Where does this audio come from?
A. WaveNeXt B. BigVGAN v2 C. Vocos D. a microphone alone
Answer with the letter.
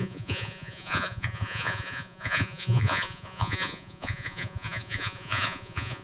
C